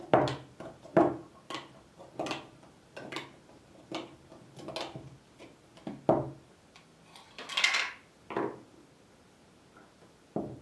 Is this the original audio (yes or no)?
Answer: yes